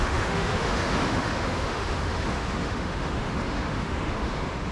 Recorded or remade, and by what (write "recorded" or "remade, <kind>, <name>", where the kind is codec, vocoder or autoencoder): remade, autoencoder, DAC-VAE